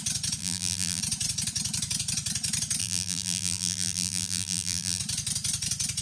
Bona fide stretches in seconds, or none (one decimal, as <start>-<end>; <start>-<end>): 0.0-0.4; 1.0-2.8; 5.0-6.0